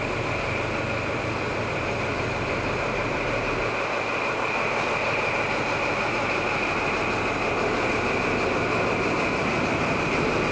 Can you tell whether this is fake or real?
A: real